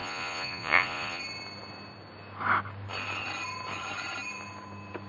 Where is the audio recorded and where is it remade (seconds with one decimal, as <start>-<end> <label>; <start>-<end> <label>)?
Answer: 0.0-1.2 remade; 1.2-5.1 recorded